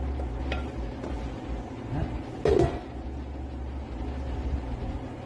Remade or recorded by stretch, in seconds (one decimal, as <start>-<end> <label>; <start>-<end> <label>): 0.0-5.3 recorded